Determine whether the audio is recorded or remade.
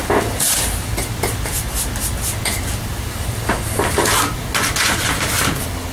recorded